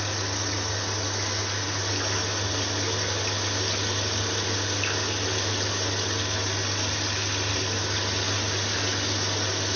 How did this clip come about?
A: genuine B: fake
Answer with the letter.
A